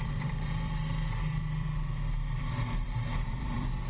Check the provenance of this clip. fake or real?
fake